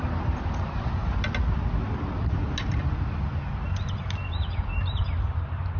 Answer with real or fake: real